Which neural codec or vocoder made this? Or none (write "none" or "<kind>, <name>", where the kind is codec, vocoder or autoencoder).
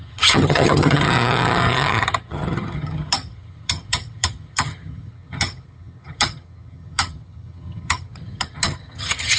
vocoder, HiFi-GAN